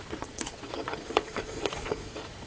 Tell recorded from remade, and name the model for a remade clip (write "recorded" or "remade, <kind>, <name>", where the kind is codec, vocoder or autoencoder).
remade, vocoder, Vocos